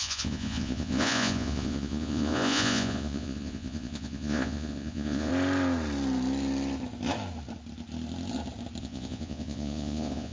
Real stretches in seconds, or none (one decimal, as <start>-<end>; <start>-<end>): 5.3-8.8